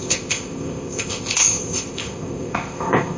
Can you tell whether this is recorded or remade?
remade